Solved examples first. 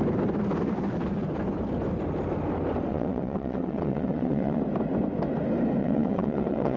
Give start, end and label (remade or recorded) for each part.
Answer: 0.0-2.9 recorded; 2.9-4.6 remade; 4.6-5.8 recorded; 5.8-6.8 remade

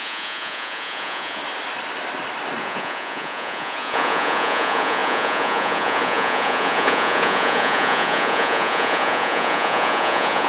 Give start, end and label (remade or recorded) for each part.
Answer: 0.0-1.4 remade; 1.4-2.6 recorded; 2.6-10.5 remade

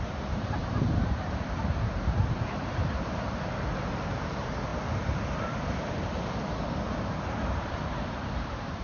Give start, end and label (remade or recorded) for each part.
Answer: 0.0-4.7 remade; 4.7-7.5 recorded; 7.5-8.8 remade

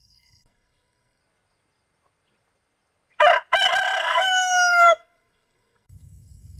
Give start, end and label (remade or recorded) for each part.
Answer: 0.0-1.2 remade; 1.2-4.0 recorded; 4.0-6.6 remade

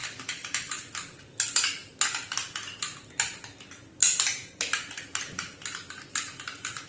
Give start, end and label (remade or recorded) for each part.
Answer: 0.0-6.9 recorded

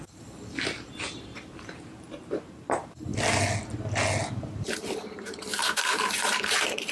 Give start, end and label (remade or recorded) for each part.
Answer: 0.0-3.1 remade; 3.1-4.3 recorded; 4.3-6.9 remade

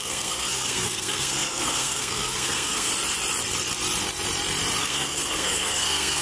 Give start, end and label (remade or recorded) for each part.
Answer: 0.0-2.9 remade; 2.9-4.8 recorded; 4.8-6.2 remade

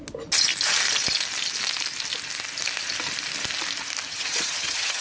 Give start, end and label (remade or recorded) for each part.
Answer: 0.0-4.1 recorded; 4.1-5.0 remade